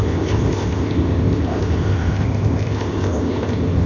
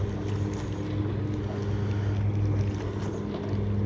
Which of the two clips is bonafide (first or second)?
second